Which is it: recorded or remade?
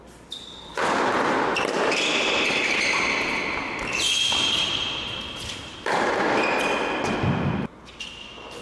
recorded